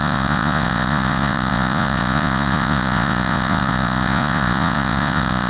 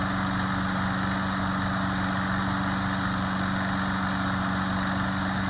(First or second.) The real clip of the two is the second